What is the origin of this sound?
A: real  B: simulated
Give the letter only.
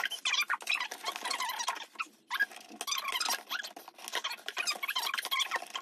A